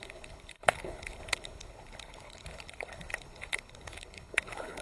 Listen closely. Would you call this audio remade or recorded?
remade